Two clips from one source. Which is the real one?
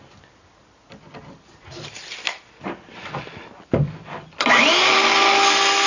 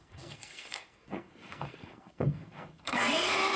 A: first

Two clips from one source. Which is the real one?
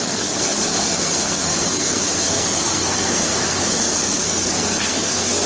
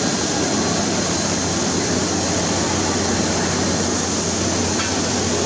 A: second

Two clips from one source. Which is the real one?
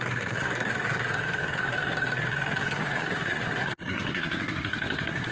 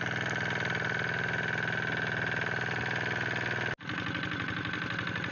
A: second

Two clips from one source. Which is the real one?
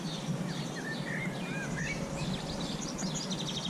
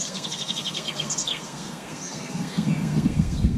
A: first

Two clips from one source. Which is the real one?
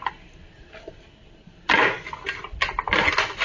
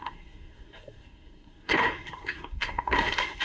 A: first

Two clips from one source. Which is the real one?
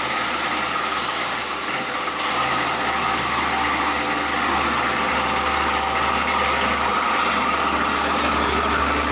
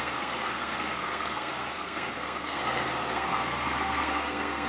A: first